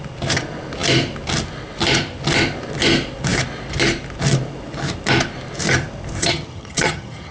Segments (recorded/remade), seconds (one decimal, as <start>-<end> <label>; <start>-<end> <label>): 0.0-6.2 recorded; 6.2-7.3 remade